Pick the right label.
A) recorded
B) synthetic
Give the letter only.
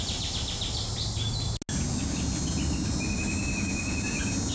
A